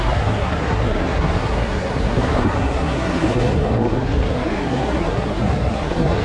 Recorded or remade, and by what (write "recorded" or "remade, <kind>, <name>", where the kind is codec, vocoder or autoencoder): remade, codec, SNAC